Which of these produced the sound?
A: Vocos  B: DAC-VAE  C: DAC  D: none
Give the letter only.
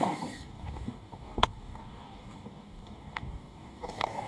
C